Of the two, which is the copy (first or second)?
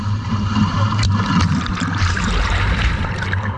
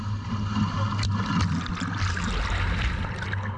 first